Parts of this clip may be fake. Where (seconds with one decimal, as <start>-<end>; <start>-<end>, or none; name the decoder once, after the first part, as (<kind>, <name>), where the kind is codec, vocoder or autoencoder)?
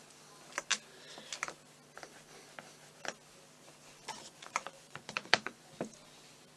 4.2-5.7 (vocoder, Vocos)